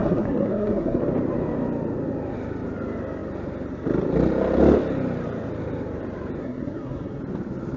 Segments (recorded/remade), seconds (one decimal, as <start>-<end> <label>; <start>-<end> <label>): 0.0-1.0 remade; 1.0-6.4 recorded; 6.4-7.2 remade; 7.2-7.8 recorded